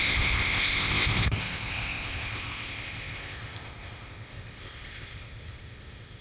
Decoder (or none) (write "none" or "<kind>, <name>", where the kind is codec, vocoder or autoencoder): codec, ZipCodec